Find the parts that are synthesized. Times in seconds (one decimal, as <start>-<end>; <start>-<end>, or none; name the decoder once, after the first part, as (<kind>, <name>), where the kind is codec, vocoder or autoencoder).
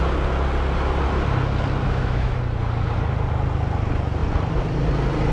1.8-2.4 (autoencoder, DAC-VAE)